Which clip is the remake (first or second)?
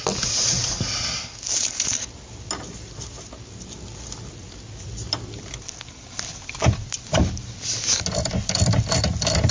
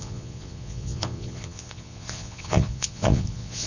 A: second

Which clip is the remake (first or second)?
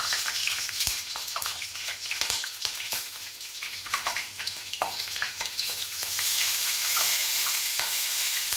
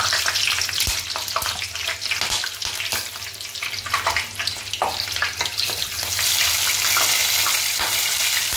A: first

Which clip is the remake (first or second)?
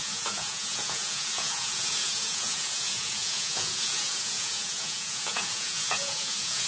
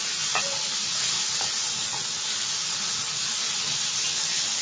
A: first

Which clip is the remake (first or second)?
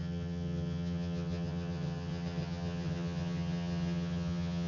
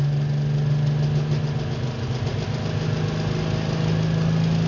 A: first